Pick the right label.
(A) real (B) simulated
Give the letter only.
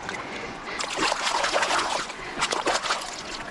B